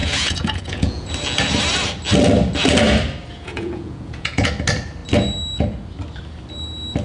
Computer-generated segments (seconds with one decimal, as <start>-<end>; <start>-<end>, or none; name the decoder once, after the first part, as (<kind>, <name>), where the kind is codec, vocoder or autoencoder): 0.0-1.1 (vocoder, Vocos); 3.3-4.5